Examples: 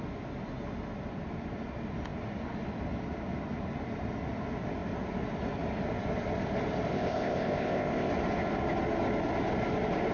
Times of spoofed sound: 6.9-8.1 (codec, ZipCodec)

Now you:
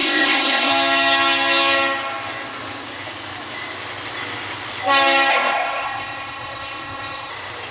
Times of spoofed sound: 0.0-0.7 (codec, ZipCodec); 5.3-7.3

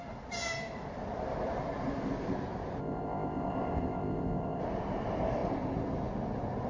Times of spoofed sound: 2.8-4.6 (codec, ZipCodec)

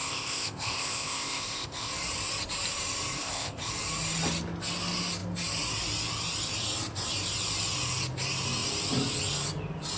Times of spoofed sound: 0.0-1.9 (codec, ZipCodec); 3.2-3.7

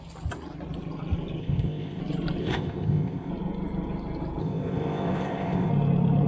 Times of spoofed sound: 1.4-2.0 (codec, ZipCodec); 2.4-3.3; 4.4-5.7

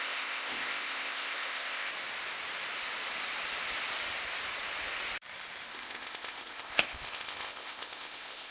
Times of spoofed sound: 0.0-1.9 (codec, ZipCodec); 5.7-8.5

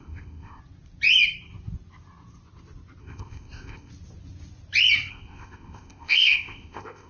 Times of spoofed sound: 0.0-0.6 (codec, ZipCodec); 3.0-3.9; 5.1-7.1